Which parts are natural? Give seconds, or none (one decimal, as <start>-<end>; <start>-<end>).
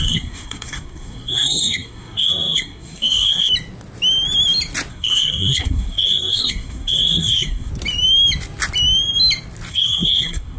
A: 3.5-4.9; 7.7-9.7